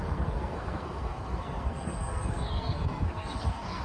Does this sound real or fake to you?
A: fake